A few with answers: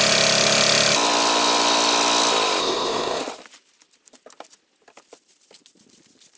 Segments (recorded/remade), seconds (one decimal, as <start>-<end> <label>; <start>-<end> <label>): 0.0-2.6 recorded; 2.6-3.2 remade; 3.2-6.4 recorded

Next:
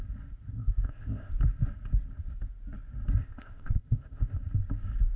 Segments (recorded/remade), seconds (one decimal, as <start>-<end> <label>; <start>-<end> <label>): 0.0-0.5 recorded; 0.5-1.3 remade; 1.3-3.2 recorded; 3.2-4.4 remade; 4.4-5.2 recorded

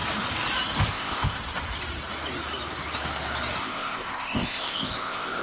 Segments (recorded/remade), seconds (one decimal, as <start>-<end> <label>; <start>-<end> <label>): 0.0-0.9 recorded; 0.9-1.4 remade; 1.4-3.6 recorded; 3.6-5.4 remade

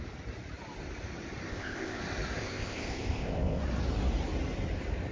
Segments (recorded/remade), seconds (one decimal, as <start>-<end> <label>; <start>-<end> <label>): 0.0-1.5 recorded; 1.5-2.0 remade; 2.0-2.4 recorded; 2.4-3.6 remade; 3.6-5.1 recorded